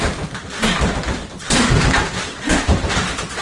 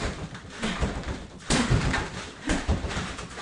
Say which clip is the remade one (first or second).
second